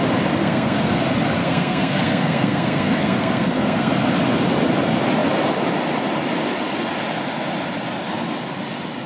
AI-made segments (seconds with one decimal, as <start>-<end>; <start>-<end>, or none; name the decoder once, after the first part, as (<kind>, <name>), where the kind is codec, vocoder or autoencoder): 0.4-1.0 (codec, SNAC); 1.4-3.9